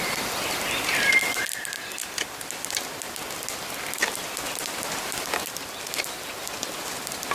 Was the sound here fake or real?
real